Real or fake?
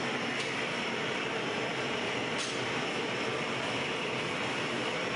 fake